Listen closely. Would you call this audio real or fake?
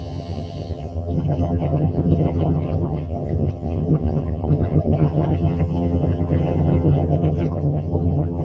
fake